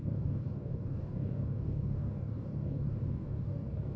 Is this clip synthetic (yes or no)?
yes